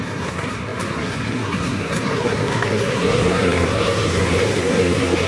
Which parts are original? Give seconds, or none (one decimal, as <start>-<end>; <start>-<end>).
none